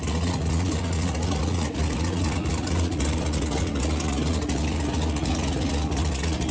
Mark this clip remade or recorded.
remade